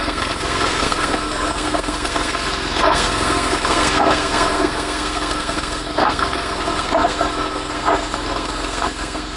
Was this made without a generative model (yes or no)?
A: no